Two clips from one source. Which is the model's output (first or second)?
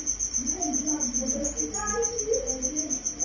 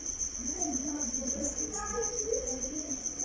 second